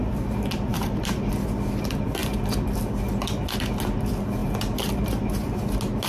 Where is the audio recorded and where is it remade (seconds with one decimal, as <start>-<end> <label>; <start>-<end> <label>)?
0.0-0.7 recorded; 0.7-1.3 remade; 1.3-6.1 recorded